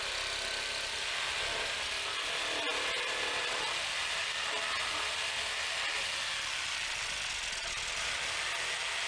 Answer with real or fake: real